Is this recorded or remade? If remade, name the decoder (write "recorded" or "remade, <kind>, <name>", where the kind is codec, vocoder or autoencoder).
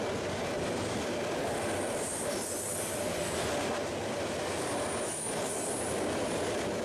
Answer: recorded